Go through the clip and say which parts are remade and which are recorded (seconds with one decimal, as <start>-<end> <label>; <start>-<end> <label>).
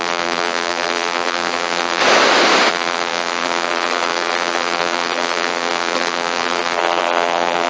0.0-2.0 remade; 2.0-2.7 recorded; 2.7-7.7 remade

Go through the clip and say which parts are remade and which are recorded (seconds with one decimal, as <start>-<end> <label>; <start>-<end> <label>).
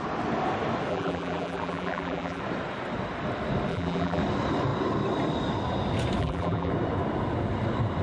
0.0-0.9 recorded; 0.9-2.4 remade; 2.4-3.7 recorded; 3.7-4.2 remade; 4.2-6.2 recorded; 6.2-6.7 remade; 6.7-8.0 recorded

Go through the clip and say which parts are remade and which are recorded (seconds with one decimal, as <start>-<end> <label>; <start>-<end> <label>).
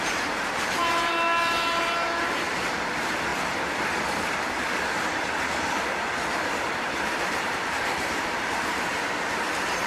0.0-3.3 remade; 3.3-6.6 recorded; 6.6-8.9 remade; 8.9-9.5 recorded; 9.5-9.9 remade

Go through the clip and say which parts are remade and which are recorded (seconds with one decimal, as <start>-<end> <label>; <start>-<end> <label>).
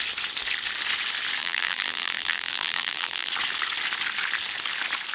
0.0-1.4 recorded; 1.4-3.3 remade; 3.3-5.1 recorded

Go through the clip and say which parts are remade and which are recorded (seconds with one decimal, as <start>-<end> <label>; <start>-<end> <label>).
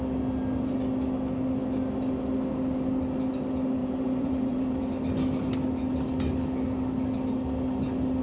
0.0-3.8 recorded; 3.8-4.8 remade; 4.8-8.2 recorded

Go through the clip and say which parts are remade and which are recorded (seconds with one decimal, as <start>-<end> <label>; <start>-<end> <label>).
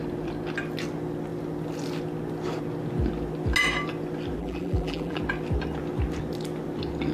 0.0-4.4 recorded; 4.4-5.2 remade; 5.2-7.1 recorded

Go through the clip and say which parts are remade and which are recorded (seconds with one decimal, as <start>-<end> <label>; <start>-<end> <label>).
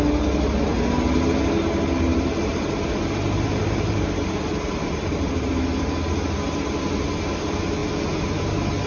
0.0-2.1 recorded; 2.1-5.5 remade; 5.5-8.9 recorded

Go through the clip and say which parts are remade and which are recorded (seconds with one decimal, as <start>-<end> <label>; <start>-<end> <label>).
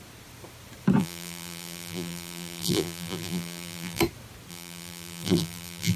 0.0-1.0 recorded; 1.0-4.0 remade; 4.0-4.5 recorded; 4.5-6.0 remade